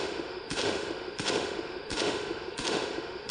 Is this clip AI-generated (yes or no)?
yes